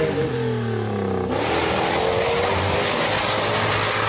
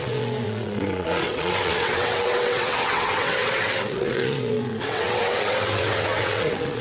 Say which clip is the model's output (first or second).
second